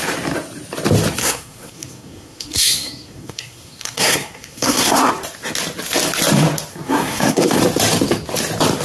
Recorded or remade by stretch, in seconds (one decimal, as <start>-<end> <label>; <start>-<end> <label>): 0.0-1.2 recorded; 1.2-5.1 remade; 5.1-6.7 recorded; 6.7-7.6 remade; 7.6-8.8 recorded